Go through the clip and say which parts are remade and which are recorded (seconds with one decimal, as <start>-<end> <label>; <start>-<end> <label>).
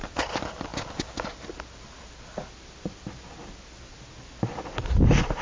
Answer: 0.0-5.4 recorded